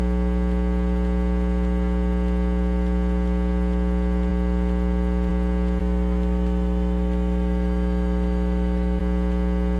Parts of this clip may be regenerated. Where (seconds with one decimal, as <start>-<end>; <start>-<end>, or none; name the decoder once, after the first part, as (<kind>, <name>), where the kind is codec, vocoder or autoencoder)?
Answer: 5.8-9.0 (autoencoder, DAC-VAE)